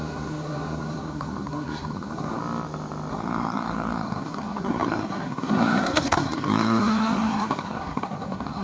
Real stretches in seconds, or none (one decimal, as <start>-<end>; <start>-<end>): 2.4-3.1